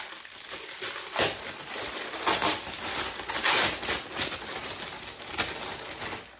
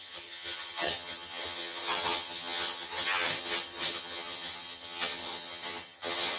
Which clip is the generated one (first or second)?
second